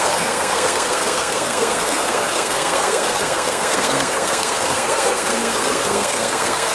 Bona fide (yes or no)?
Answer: no